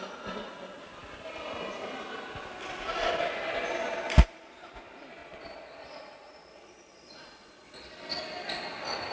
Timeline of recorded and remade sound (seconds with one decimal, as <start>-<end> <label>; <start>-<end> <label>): 0.0-5.2 recorded; 5.2-7.9 remade; 7.9-9.1 recorded